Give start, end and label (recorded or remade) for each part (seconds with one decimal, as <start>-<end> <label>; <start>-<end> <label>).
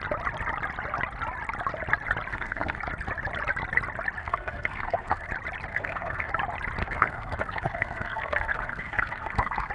0.0-2.3 recorded; 2.3-2.8 remade; 2.8-4.2 recorded; 4.2-5.3 remade; 5.3-5.7 recorded; 5.7-6.3 remade; 6.3-6.8 recorded; 6.8-9.7 remade